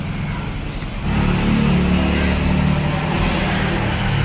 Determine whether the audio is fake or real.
real